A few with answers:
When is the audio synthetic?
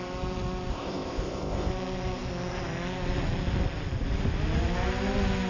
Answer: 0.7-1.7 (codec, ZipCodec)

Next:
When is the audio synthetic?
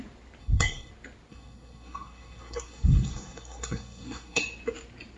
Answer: 0.4-0.9 (codec, SNAC); 1.3-4.4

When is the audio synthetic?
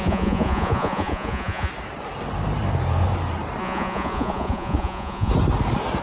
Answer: 0.0-1.7 (vocoder, Vocos); 3.6-5.3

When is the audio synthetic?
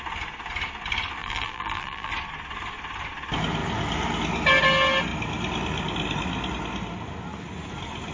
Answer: 1.2-2.1 (vocoder, BigVGAN v2)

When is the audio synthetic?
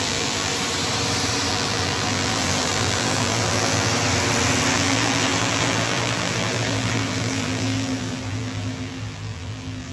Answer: 0.0-0.5 (vocoder, BigVGAN v2); 1.5-3.9; 4.7-9.9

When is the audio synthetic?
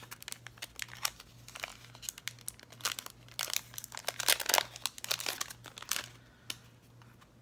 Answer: none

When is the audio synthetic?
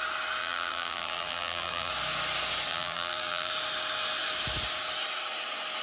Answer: 0.4-1.9 (vocoder, BigVGAN v2); 2.7-3.5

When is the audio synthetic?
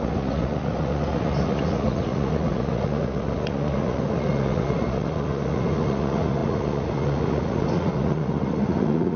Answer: 0.0-9.2 (vocoder, Vocos)